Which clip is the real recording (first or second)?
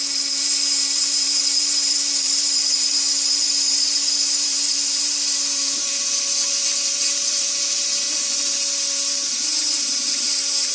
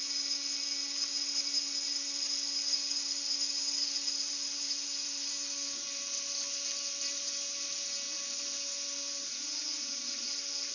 second